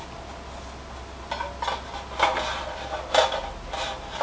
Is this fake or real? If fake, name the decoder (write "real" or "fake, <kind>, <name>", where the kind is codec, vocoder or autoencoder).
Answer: real